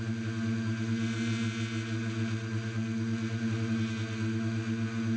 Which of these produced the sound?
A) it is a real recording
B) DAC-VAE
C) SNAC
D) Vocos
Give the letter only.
A